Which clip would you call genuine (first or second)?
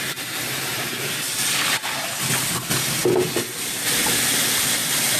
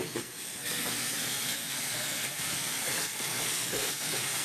first